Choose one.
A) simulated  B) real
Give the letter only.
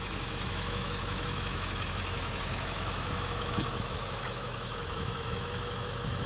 A